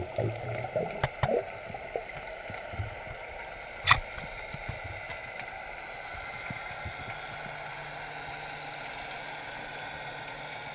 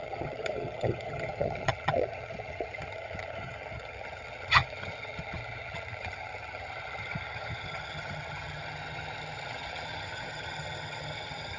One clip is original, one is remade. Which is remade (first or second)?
second